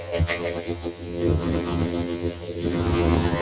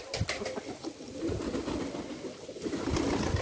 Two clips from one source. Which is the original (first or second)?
second